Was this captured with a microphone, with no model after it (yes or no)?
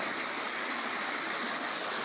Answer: yes